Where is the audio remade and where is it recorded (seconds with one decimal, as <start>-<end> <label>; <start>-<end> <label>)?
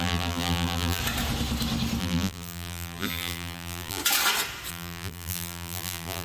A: 0.0-1.0 remade; 1.0-2.0 recorded; 2.0-4.0 remade; 4.0-4.7 recorded; 4.7-6.2 remade